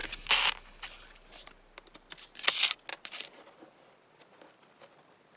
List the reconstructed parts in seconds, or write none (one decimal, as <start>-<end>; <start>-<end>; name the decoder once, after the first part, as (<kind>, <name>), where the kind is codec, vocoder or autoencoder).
2.9-3.6 (vocoder, BigVGAN v2)